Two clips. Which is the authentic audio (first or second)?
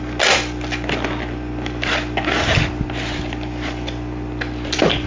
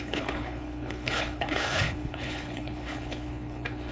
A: first